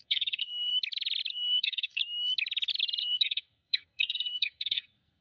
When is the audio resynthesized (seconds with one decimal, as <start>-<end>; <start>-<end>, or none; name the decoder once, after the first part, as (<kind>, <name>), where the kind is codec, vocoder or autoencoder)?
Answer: 0.0-0.7 (codec, SNAC); 1.3-2.0; 3.0-5.2

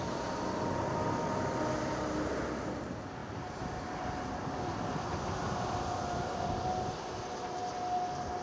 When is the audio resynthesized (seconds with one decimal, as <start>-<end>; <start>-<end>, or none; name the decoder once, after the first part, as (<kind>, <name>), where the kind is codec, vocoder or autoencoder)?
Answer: none

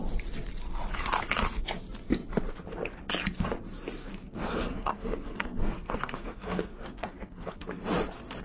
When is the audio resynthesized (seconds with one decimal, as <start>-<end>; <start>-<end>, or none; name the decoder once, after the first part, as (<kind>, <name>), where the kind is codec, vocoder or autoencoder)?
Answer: 4.0-7.8 (codec, SNAC)

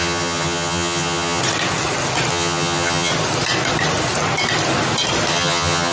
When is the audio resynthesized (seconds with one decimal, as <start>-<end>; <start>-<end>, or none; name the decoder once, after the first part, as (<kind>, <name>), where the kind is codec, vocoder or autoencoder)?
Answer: 0.0-1.4 (vocoder, HiFi-GAN); 2.3-3.1; 5.3-5.9

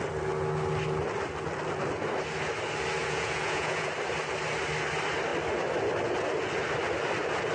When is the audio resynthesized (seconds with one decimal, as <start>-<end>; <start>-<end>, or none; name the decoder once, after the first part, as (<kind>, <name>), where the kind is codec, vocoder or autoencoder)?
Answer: 3.0-3.9 (vocoder, Vocos)

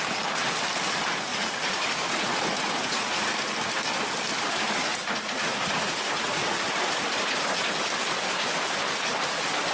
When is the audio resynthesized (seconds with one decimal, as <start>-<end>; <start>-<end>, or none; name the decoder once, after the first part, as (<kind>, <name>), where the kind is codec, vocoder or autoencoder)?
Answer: 1.3-3.3 (vocoder, Vocos); 4.9-6.7

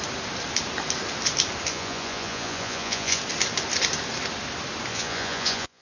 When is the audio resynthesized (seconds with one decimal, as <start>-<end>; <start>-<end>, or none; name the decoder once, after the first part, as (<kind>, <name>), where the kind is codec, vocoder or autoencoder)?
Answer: 1.7-3.2 (vocoder, Vocos); 4.9-5.8